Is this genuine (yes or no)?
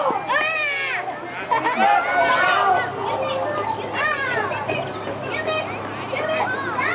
yes